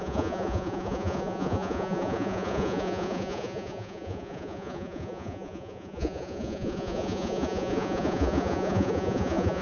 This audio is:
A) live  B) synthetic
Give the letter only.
B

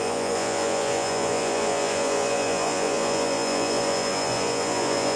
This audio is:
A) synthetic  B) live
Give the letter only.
A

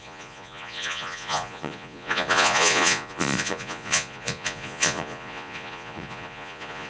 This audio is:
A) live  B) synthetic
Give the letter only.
B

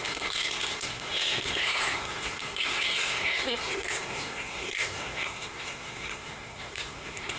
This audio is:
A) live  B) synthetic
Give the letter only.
B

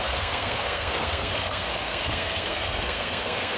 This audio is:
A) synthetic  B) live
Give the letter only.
A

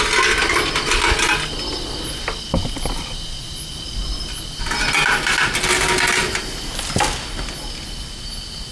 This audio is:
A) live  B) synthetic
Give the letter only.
A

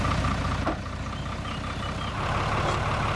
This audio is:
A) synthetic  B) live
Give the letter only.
B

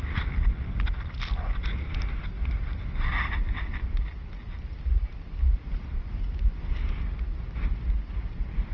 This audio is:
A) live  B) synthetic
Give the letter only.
A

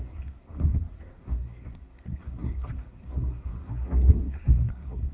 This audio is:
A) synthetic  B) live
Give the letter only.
A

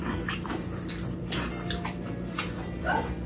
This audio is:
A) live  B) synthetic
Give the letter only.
B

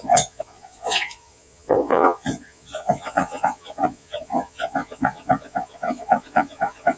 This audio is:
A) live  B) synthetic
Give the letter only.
B